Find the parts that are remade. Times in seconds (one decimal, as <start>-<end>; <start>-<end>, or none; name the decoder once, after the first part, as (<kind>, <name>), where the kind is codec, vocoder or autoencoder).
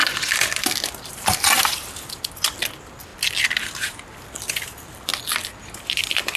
0.0-3.1 (vocoder, BigVGAN v2); 4.3-5.1; 6.0-6.4